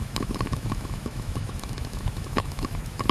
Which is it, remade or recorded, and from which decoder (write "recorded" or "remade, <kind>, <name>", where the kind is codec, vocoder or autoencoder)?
remade, autoencoder, DAC-VAE